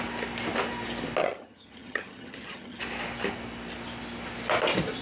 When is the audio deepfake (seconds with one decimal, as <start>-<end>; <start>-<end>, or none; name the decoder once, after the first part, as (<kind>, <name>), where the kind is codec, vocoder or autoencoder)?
1.2-2.8 (vocoder, HiFi-GAN)